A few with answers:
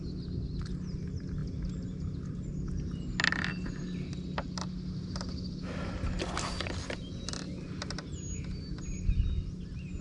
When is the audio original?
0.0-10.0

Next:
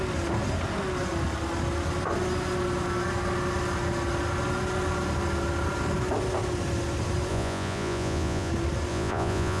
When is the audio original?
0.0-7.3; 8.5-8.9

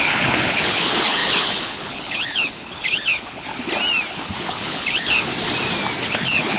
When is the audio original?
3.5-4.1; 5.3-6.1

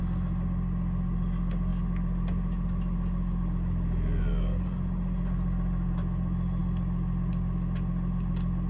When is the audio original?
0.0-8.7

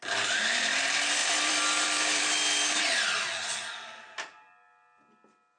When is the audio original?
0.0-1.2; 2.8-5.6

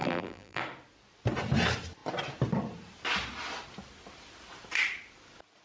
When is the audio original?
0.6-5.6

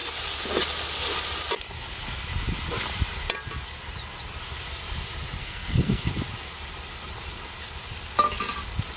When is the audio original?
0.0-5.4; 6.1-9.0

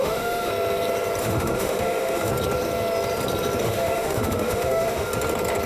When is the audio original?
0.5-1.2; 2.3-3.6; 5.1-5.7